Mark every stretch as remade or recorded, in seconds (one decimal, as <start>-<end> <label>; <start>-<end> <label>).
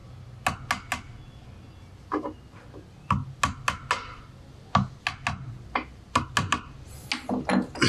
0.0-7.9 recorded